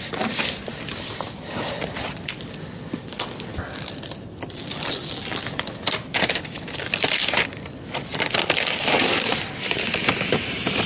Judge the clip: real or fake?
real